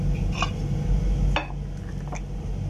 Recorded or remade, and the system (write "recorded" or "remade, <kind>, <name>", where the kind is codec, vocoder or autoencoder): recorded